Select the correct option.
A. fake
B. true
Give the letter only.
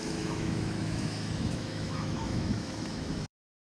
A